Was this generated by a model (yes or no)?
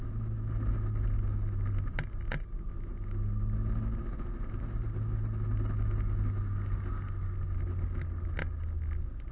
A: no